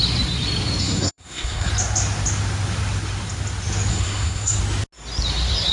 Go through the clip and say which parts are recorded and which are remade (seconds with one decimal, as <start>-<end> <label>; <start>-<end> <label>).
0.0-0.8 recorded; 0.8-1.7 remade; 1.7-3.9 recorded; 3.9-4.6 remade; 4.6-5.7 recorded